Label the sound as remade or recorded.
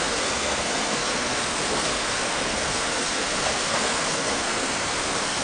remade